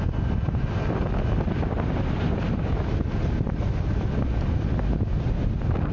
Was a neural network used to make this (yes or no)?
no